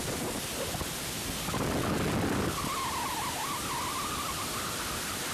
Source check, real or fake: real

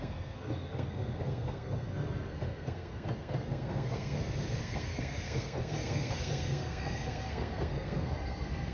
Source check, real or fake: fake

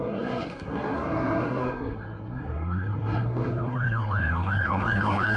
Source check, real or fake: fake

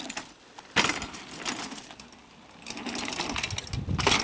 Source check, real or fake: real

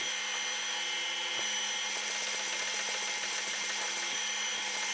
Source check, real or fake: real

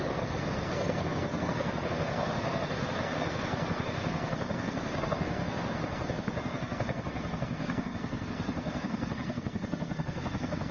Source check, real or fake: fake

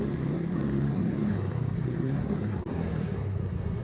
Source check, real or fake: fake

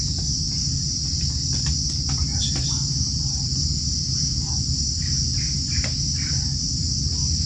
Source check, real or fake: real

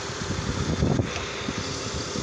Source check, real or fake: real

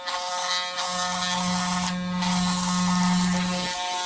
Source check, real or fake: real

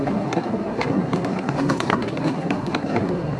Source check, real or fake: fake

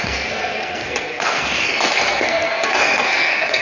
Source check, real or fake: fake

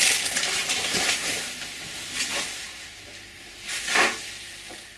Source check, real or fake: real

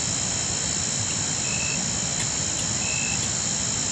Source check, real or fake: real